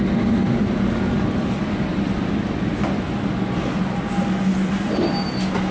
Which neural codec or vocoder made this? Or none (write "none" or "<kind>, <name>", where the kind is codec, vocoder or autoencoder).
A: none